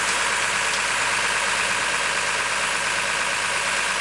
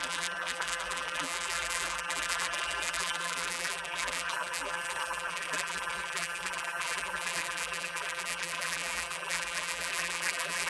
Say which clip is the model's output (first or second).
second